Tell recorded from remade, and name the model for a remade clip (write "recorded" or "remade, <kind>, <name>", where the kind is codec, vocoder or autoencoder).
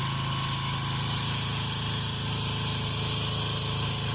recorded